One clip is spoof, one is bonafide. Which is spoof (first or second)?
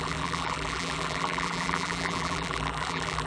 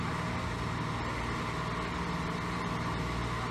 first